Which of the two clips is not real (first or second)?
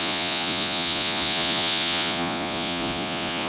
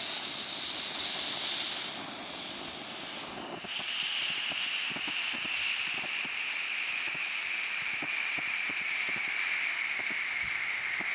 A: first